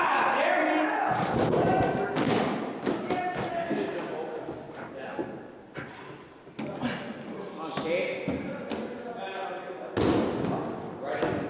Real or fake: real